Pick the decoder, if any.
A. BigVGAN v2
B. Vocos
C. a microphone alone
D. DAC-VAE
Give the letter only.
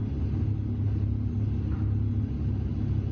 C